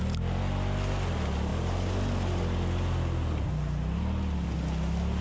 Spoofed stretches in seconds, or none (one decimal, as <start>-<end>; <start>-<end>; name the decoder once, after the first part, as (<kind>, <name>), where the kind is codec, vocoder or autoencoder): none